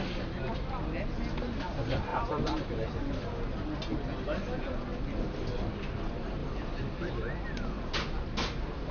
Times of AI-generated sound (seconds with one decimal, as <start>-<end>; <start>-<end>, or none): 2.1-3.2; 6.4-7.1